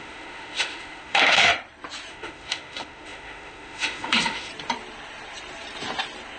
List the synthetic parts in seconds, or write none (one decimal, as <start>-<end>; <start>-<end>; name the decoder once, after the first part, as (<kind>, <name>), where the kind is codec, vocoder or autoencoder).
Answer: 0.0-1.5 (autoencoder, DAC-VAE); 2.1-4.5